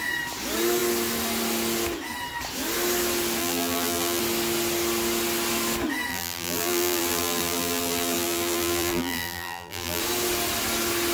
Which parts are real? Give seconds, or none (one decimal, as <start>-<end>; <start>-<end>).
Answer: 0.0-3.4; 4.2-6.1; 10.0-11.1